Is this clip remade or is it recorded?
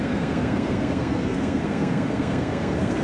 remade